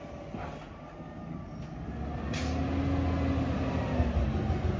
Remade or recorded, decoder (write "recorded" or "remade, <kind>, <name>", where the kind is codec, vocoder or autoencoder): recorded